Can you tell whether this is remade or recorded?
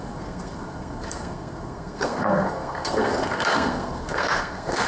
remade